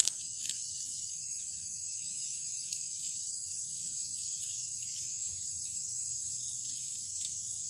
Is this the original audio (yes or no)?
no